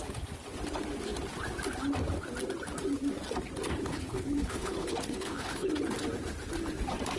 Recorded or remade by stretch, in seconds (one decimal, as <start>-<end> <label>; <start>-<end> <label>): 0.0-3.8 recorded; 3.8-5.7 remade; 5.7-7.2 recorded